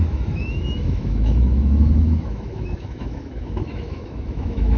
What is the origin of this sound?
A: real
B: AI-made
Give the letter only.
B